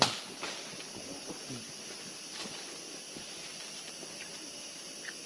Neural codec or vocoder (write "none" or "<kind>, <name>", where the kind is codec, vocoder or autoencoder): none